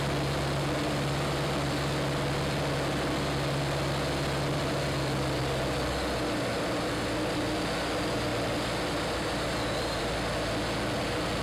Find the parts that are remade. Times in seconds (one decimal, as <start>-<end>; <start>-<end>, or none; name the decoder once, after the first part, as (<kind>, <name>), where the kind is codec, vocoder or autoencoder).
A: none